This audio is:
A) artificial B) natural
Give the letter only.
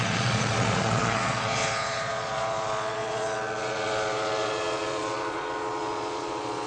A